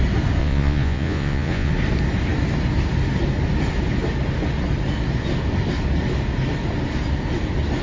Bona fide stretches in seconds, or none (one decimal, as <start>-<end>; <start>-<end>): 0.0-0.4; 1.7-7.8